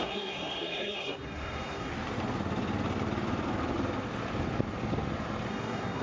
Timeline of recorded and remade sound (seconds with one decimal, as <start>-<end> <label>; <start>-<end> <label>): 0.0-1.9 remade; 1.9-5.5 recorded; 5.5-6.0 remade